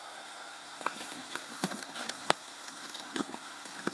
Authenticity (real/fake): fake